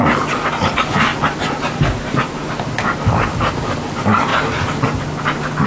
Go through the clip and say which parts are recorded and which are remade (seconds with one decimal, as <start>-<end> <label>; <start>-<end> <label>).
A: 0.0-5.7 recorded